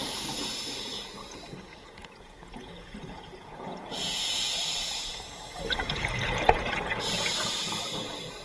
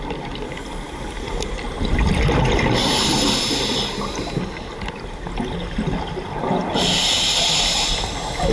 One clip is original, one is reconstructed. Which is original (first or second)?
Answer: second